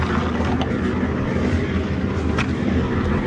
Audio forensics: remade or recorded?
recorded